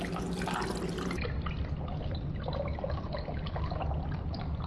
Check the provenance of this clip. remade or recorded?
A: recorded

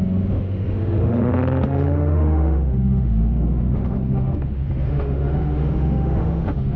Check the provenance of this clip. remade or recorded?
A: remade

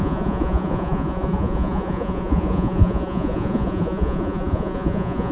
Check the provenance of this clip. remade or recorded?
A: remade